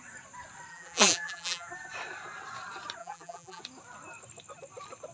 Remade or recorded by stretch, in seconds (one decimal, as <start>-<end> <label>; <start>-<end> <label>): 0.0-0.7 recorded; 0.7-1.7 remade; 1.7-3.0 recorded; 3.0-3.6 remade; 3.6-5.1 recorded